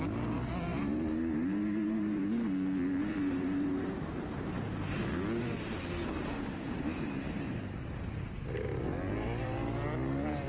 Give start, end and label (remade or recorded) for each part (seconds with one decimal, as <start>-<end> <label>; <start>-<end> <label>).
0.0-0.7 recorded; 0.7-2.3 remade; 2.3-3.0 recorded; 3.0-5.0 remade; 5.0-6.0 recorded; 6.0-8.3 remade; 8.3-10.5 recorded

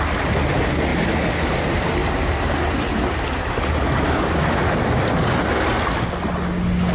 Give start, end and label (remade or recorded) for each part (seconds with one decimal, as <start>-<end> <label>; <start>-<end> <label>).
0.0-0.9 recorded; 0.9-1.6 remade; 1.6-6.9 recorded

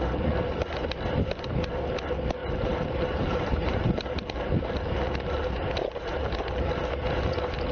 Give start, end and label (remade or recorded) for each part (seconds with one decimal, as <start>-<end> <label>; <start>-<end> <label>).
0.0-2.4 recorded; 2.4-4.7 remade; 4.7-5.4 recorded; 5.4-6.3 remade; 6.3-7.7 recorded

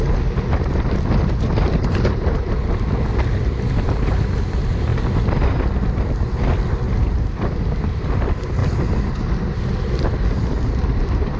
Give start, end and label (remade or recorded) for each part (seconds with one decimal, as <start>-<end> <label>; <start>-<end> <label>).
0.0-0.6 recorded; 0.6-4.9 remade; 4.9-7.4 recorded; 7.4-8.6 remade; 8.6-9.9 recorded; 9.9-11.4 remade